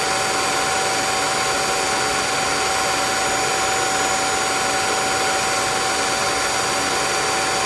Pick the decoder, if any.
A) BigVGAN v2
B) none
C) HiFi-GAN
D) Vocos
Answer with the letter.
B